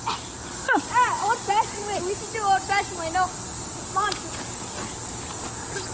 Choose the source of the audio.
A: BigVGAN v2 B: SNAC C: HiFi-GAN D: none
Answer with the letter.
D